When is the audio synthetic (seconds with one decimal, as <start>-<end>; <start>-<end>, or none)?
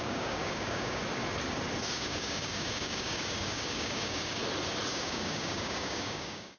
0.0-1.0; 1.8-4.4; 4.9-6.6